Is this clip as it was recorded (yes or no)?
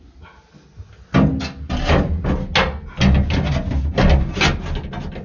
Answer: yes